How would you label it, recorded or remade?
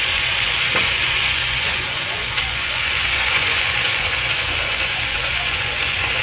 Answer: remade